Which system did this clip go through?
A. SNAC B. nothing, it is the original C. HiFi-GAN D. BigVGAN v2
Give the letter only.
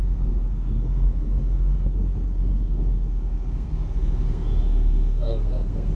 A